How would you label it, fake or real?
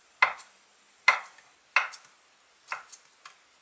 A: real